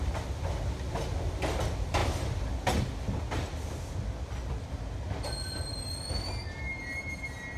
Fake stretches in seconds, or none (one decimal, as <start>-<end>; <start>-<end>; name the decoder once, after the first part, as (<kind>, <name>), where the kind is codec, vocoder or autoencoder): none